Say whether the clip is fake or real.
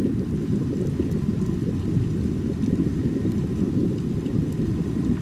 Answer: real